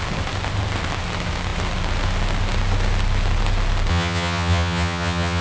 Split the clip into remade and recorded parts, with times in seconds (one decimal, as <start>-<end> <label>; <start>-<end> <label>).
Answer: 0.0-3.9 recorded; 3.9-5.4 remade